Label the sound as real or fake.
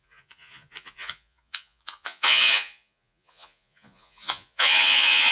fake